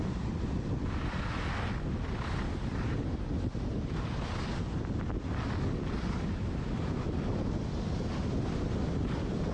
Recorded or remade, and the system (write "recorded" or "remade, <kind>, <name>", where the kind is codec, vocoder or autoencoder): recorded